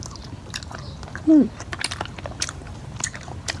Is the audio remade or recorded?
recorded